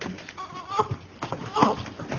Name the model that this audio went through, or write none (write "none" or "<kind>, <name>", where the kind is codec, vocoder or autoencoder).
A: vocoder, BigVGAN v2